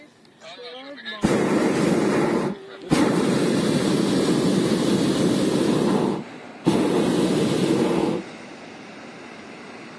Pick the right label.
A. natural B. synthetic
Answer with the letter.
A